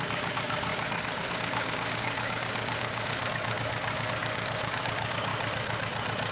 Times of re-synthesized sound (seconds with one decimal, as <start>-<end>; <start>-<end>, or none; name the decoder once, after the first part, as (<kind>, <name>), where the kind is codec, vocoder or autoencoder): 0.0-5.3 (codec, DAC)